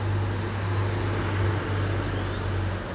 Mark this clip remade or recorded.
recorded